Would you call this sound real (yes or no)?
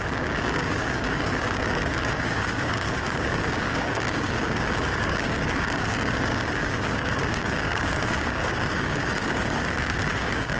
no